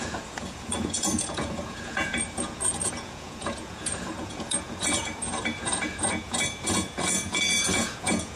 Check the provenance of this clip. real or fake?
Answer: fake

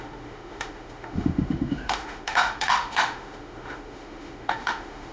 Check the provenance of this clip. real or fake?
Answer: fake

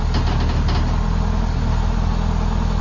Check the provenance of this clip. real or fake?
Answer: real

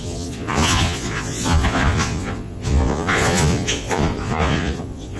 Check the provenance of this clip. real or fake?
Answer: fake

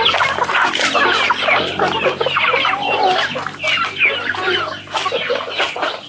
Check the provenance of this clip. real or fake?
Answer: real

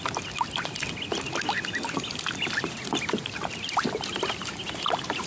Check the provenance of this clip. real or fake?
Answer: real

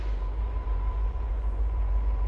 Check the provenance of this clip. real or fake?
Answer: fake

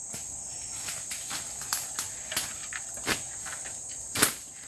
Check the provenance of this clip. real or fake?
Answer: real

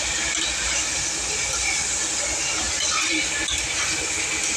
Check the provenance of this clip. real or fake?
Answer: real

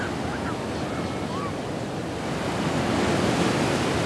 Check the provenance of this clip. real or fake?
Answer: real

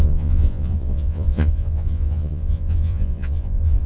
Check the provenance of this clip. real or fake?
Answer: fake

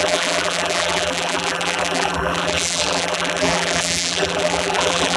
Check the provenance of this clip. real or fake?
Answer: fake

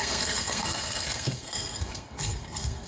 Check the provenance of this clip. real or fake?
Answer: fake